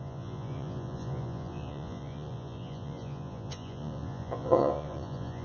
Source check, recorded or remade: remade